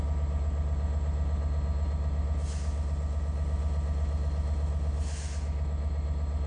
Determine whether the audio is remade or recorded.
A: recorded